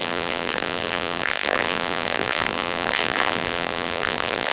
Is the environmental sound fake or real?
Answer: fake